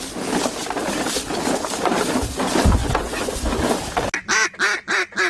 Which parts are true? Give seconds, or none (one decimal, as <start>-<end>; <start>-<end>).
0.0-2.8; 3.5-5.3